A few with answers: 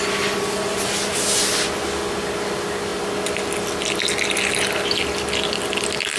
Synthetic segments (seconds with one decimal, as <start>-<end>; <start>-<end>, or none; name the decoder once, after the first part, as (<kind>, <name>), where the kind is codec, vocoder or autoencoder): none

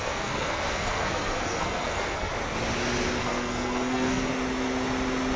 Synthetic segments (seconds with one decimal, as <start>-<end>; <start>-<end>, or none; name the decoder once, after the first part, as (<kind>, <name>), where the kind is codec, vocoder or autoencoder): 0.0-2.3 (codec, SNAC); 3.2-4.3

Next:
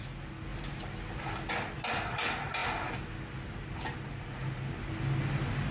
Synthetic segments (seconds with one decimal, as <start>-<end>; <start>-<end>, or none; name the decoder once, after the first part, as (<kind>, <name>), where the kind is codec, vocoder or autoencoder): none

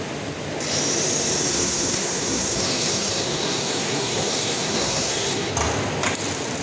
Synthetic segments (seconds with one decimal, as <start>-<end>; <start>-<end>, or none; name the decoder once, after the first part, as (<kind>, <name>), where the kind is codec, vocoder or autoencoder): 1.5-5.5 (codec, SNAC)